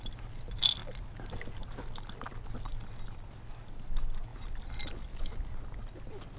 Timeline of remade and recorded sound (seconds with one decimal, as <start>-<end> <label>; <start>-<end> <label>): 0.0-6.4 recorded